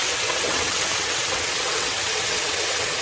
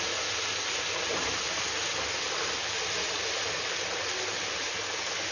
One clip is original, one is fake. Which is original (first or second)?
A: second